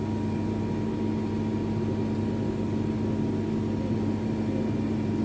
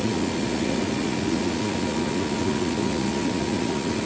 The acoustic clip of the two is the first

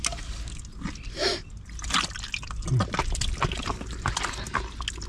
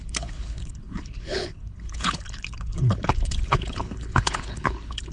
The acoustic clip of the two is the first